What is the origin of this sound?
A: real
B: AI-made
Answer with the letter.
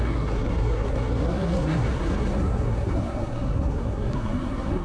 B